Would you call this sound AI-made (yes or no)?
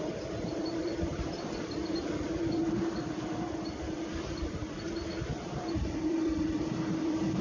yes